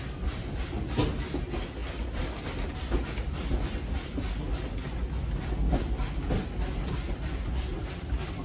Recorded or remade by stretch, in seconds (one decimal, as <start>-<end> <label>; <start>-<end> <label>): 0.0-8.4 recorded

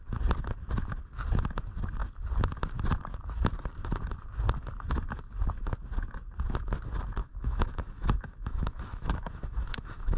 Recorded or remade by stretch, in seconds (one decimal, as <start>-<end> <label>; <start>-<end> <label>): 0.0-7.2 recorded; 7.2-10.2 remade

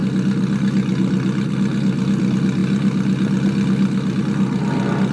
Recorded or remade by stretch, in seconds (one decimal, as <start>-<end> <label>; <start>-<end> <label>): 0.0-5.1 recorded

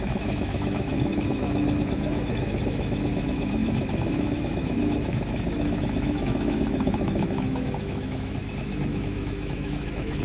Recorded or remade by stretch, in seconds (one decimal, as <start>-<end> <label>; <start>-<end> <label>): 0.0-10.2 remade